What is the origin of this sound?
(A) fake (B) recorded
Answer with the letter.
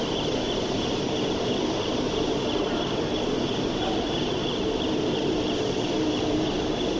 A